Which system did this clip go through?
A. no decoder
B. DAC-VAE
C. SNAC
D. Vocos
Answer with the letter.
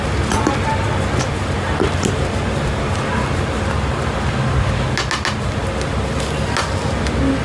A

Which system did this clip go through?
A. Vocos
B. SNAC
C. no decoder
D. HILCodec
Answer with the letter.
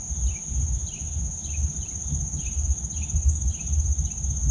C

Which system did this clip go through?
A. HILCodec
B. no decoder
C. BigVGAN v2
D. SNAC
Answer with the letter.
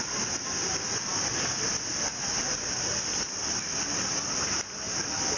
B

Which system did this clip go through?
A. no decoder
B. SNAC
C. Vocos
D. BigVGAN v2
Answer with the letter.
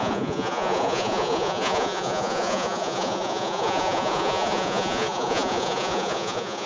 C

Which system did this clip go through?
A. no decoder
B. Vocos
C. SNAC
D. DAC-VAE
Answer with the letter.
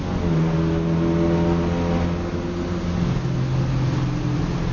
A